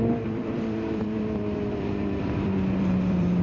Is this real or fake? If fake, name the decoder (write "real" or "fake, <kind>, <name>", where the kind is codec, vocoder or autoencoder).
fake, vocoder, BigVGAN v2